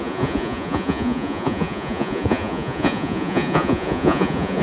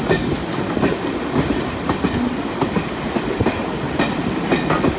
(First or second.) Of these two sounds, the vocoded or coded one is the first